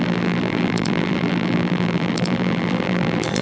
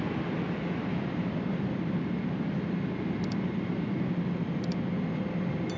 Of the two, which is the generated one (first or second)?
first